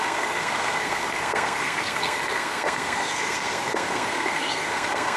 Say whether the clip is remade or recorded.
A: remade